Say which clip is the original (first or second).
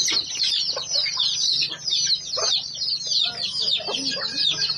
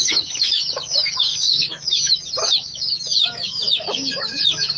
first